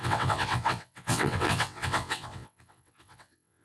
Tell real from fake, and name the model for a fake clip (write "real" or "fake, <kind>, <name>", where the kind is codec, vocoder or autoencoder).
fake, vocoder, WaveNeXt